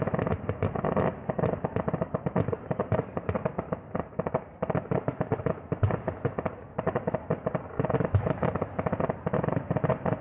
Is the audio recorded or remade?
recorded